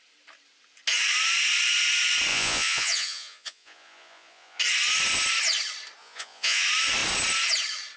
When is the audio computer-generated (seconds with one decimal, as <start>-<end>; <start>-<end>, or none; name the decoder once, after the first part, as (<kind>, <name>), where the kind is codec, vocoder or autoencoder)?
2.3-4.6 (vocoder, Vocos); 6.0-6.6